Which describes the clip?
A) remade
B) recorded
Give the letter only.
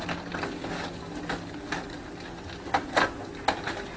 B